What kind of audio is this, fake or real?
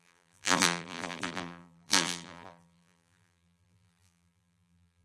fake